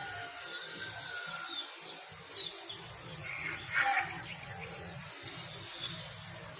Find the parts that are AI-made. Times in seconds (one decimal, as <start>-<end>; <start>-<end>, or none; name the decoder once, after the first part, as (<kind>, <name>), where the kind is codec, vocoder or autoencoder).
3.1-3.7 (vocoder, Vocos); 4.3-5.0